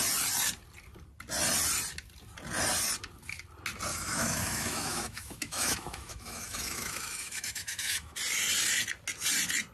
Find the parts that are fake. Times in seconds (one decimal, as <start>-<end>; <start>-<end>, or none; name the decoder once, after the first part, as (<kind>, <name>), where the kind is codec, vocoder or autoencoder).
3.9-8.2 (autoencoder, DAC-VAE)